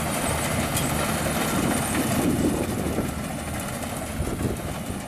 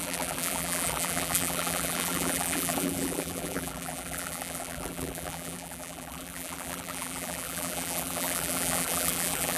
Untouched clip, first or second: first